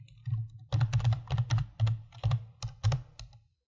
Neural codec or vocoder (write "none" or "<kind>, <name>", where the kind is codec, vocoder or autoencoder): none